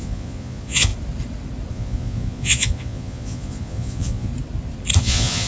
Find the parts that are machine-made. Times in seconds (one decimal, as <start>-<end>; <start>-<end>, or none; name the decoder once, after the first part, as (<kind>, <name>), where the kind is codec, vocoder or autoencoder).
0.0-0.9 (vocoder, Vocos); 1.7-4.3; 5.0-5.5